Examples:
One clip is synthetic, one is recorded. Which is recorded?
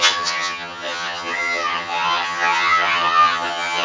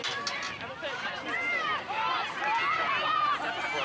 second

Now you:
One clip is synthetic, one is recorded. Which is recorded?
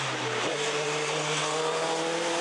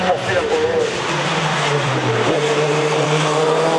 first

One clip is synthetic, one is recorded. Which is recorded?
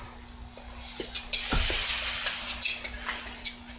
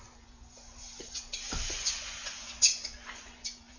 first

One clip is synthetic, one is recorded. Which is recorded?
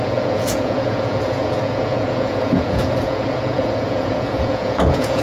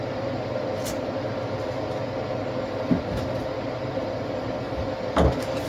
second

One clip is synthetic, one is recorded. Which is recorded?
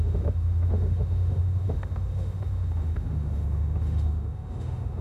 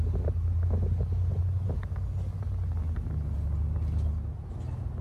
second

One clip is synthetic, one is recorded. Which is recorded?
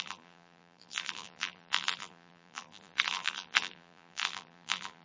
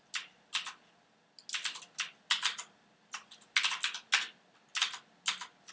second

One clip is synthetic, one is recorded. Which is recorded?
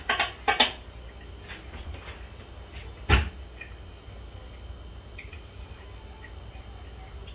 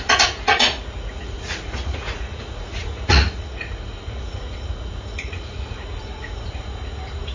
first